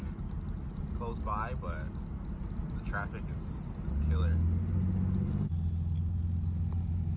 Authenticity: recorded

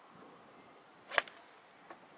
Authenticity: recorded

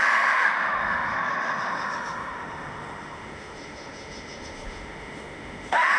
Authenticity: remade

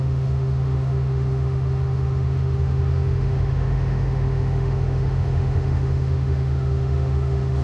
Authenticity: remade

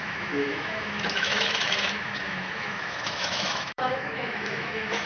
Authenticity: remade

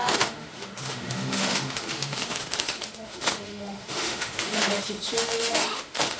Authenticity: remade